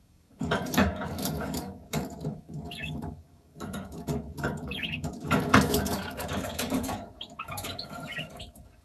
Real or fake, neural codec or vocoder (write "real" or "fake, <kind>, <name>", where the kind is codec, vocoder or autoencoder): fake, codec, DAC